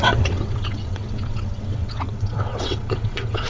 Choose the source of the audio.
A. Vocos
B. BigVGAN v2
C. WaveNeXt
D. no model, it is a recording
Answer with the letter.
C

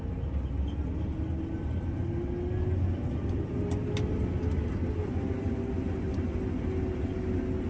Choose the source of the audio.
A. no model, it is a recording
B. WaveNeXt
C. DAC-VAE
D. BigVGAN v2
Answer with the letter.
A